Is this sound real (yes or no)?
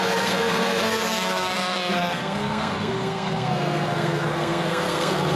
no